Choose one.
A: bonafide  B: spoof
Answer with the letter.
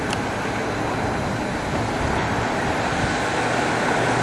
A